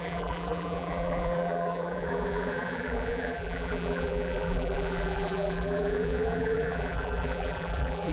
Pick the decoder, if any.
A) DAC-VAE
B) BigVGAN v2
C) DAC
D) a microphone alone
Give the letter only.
B